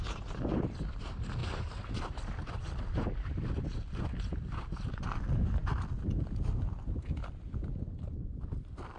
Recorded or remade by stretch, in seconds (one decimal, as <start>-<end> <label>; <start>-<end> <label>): 0.0-1.4 recorded; 1.4-2.5 remade; 2.5-9.0 recorded